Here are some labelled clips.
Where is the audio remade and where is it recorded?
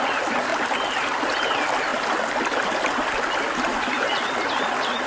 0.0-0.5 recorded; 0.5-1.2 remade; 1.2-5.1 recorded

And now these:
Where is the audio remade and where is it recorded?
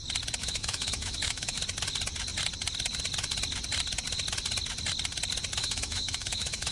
0.0-0.4 recorded; 0.4-1.6 remade; 1.6-5.6 recorded; 5.6-6.7 remade